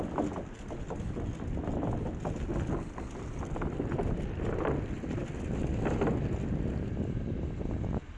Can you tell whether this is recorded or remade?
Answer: recorded